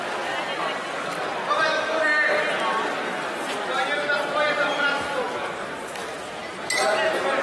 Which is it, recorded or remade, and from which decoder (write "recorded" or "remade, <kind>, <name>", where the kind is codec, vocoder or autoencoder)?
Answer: recorded